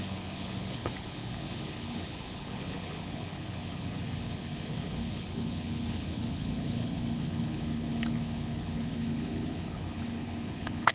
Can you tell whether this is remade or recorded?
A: remade